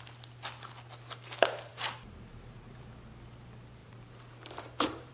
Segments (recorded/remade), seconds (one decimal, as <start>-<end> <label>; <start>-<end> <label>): 0.0-1.7 recorded; 1.7-2.5 remade; 2.5-3.8 recorded; 3.8-5.1 remade